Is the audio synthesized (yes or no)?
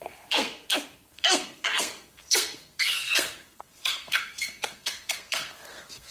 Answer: yes